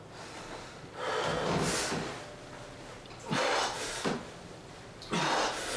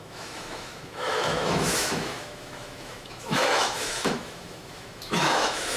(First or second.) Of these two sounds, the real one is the first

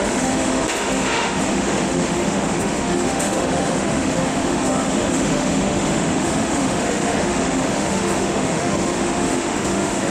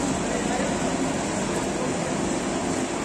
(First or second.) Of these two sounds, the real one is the second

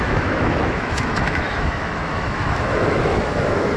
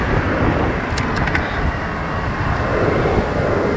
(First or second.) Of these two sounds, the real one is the second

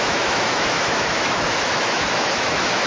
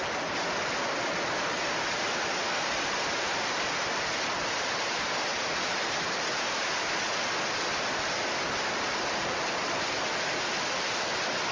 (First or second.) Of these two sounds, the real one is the second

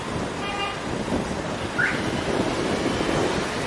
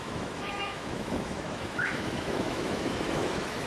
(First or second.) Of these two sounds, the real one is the first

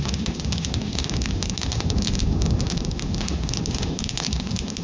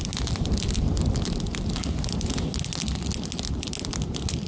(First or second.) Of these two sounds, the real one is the second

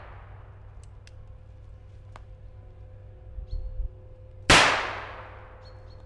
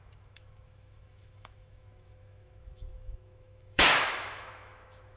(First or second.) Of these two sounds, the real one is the first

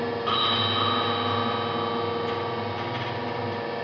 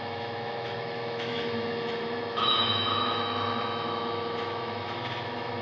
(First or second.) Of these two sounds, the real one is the first